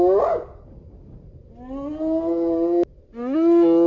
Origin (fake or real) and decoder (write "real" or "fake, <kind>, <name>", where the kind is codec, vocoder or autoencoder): real